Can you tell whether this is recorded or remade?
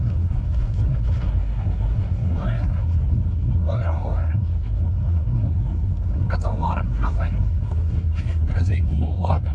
remade